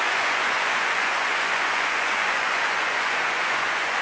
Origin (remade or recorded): remade